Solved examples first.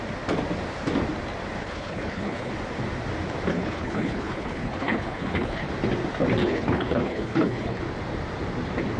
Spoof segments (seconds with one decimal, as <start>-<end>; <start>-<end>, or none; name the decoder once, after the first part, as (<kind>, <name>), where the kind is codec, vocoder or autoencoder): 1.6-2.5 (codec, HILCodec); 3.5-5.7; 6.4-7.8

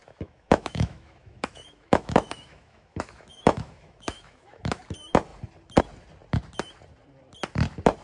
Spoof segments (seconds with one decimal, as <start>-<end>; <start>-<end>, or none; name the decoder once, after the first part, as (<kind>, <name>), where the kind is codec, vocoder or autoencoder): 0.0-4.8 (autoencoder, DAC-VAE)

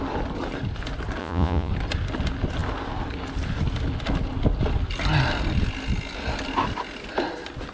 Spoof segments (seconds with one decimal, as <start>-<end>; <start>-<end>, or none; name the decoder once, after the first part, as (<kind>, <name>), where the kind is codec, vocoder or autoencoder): 1.2-1.7 (vocoder, Vocos)

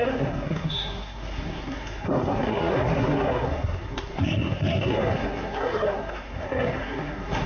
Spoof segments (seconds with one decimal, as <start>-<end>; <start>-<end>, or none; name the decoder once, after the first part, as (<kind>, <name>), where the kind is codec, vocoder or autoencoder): 0.0-7.5 (codec, SNAC)